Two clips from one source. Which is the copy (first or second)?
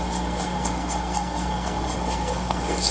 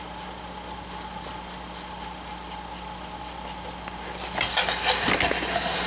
first